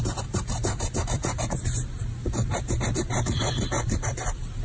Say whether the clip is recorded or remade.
remade